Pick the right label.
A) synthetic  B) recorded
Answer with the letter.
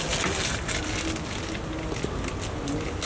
B